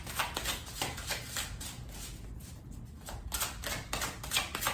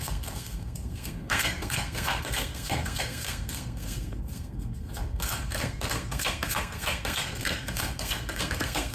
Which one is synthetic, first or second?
second